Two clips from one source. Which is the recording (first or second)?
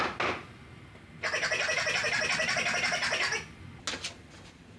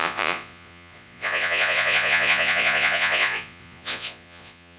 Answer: first